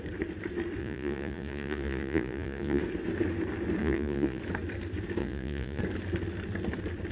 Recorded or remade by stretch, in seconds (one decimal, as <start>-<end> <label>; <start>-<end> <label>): 0.0-0.8 recorded; 0.8-2.8 remade; 2.8-3.8 recorded; 3.8-4.4 remade; 4.4-5.2 recorded; 5.2-5.8 remade; 5.8-7.1 recorded